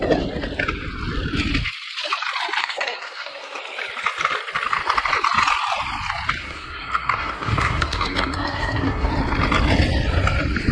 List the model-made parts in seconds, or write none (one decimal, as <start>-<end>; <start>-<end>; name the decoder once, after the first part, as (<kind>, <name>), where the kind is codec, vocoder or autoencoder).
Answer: 2.6-3.6 (codec, SNAC); 6.4-9.1